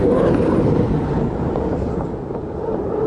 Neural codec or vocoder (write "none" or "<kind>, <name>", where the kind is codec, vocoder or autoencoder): vocoder, BigVGAN v2